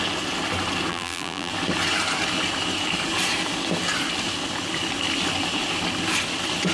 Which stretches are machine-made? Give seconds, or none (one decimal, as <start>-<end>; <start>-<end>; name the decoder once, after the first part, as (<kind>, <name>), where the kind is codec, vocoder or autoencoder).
0.9-1.5 (vocoder, BigVGAN v2)